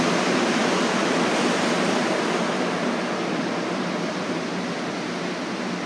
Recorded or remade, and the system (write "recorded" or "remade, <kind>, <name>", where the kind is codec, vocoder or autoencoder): recorded